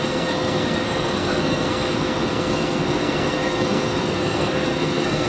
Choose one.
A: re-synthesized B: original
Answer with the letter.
A